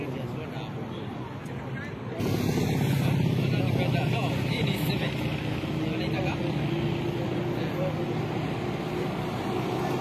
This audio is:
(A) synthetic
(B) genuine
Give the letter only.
B